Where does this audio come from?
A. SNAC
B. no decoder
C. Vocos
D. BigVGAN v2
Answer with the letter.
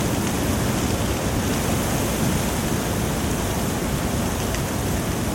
B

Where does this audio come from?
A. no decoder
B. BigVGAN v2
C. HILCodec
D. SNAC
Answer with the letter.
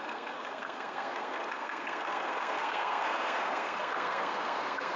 D